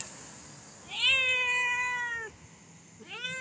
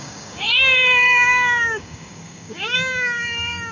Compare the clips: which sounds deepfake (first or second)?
second